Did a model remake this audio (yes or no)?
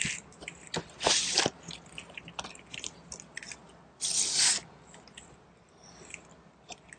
no